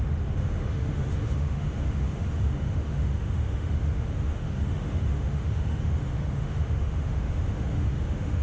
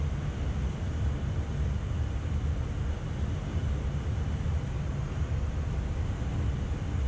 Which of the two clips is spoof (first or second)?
first